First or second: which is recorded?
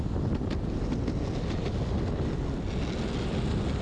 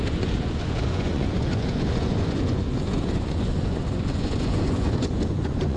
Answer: first